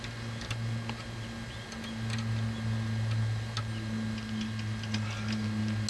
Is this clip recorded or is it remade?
recorded